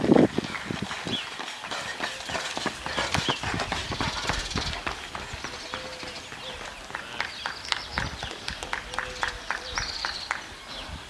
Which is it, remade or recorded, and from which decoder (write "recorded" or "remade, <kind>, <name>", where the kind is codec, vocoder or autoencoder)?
recorded